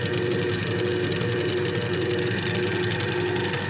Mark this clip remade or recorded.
recorded